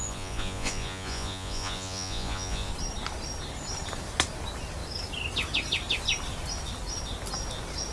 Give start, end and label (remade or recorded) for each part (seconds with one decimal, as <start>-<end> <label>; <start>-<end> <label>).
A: 0.0-2.7 remade; 2.7-7.9 recorded